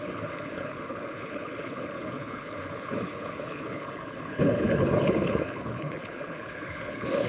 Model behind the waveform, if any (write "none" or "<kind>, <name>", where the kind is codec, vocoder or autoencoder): codec, HILCodec